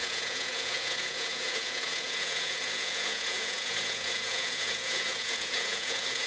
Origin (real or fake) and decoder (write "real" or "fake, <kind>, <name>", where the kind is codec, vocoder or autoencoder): fake, vocoder, Vocos